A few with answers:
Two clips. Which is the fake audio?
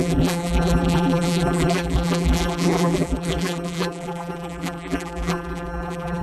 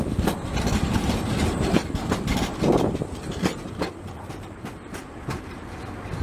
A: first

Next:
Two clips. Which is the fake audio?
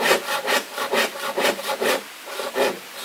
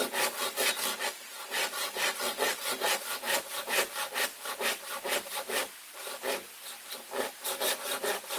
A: first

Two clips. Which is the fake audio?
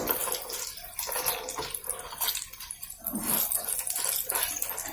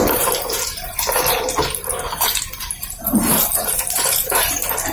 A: second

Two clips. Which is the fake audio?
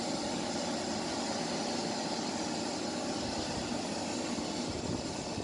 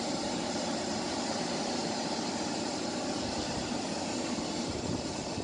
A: second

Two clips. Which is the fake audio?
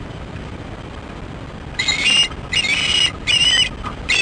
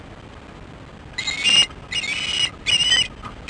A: first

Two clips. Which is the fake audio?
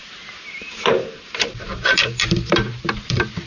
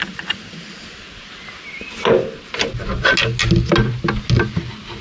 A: first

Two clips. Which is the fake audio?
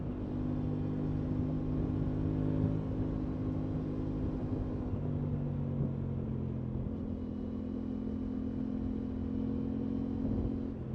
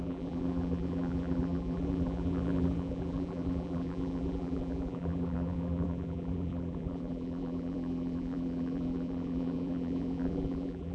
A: second